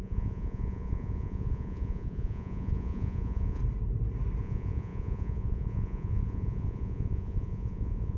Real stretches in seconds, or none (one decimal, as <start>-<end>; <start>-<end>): 3.6-4.4